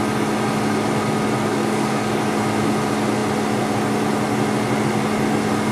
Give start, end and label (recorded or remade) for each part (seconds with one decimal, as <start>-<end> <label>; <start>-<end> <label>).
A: 0.0-1.5 recorded; 1.5-2.3 remade; 2.3-5.7 recorded